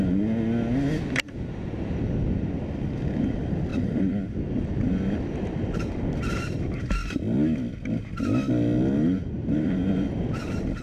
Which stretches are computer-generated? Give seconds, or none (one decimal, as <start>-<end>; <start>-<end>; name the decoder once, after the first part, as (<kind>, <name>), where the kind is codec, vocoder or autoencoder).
3.7-5.9 (vocoder, BigVGAN v2); 7.0-7.7; 9.4-10.8